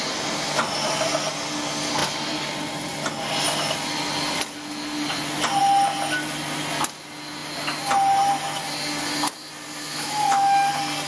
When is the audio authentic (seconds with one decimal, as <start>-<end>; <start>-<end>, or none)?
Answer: 0.0-9.9; 10.7-11.1